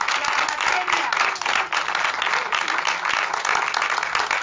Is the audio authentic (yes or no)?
yes